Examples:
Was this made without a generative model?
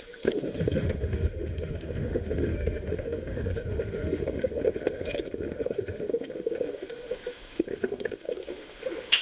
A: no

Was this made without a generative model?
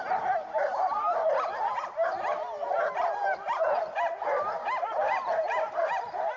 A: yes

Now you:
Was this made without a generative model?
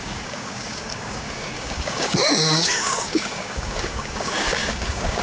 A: no